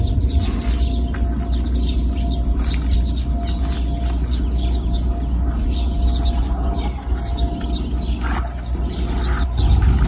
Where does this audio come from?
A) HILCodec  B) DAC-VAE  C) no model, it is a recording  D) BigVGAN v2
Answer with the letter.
C